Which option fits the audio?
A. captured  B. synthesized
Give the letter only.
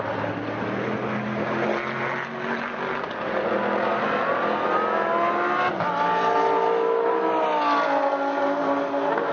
A